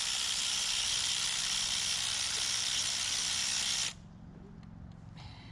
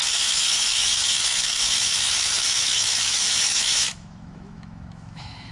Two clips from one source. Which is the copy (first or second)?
second